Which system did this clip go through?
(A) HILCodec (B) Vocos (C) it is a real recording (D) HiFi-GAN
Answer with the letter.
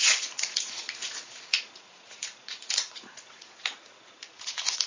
B